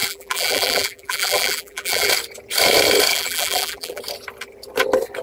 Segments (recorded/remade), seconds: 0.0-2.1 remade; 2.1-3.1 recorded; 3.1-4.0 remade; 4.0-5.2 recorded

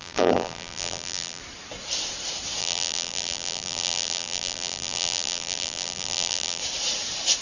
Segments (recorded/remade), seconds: 0.0-1.4 remade; 1.4-2.6 recorded; 2.6-6.6 remade; 6.6-7.4 recorded

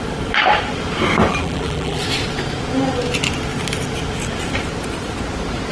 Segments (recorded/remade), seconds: 0.0-1.3 recorded; 1.3-2.0 remade; 2.0-5.7 recorded